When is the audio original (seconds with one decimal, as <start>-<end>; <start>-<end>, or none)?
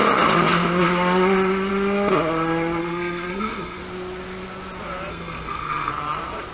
0.0-2.8; 3.8-5.1; 5.9-6.5